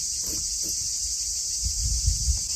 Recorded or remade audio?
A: remade